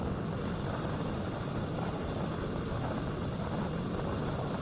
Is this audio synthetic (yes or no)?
no